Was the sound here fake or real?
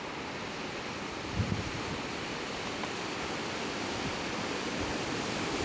fake